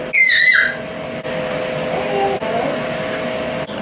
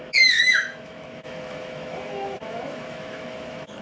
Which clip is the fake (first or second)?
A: second